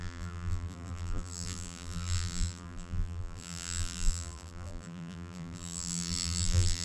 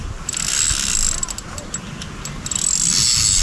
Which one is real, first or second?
second